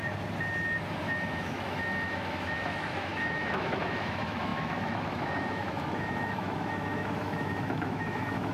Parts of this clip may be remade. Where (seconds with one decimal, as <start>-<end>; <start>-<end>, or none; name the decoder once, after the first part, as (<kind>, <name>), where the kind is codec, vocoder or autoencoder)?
1.0-8.5 (autoencoder, DAC-VAE)